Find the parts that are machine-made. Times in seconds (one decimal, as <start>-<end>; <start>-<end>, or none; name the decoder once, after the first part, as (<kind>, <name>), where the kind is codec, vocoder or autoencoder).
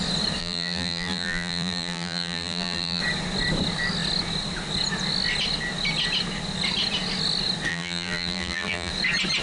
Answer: 0.4-3.0 (vocoder, BigVGAN v2); 7.7-8.9